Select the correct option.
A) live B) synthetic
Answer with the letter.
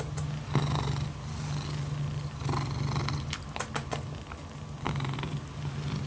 A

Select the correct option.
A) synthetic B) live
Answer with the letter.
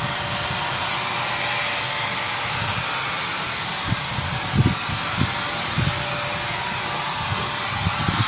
B